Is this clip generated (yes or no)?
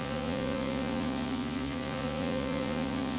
yes